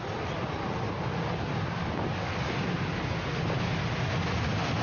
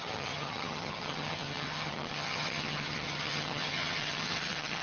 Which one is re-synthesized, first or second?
second